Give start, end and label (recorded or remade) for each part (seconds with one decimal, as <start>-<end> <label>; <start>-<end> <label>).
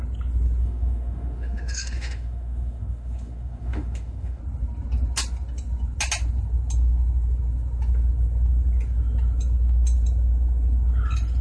0.0-0.6 recorded; 0.6-4.4 remade; 4.4-11.4 recorded